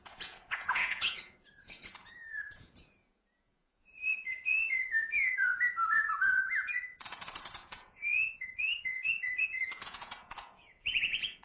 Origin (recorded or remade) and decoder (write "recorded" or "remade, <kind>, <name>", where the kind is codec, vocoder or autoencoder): remade, vocoder, Vocos